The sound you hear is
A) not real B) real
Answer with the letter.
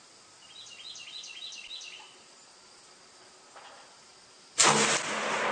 B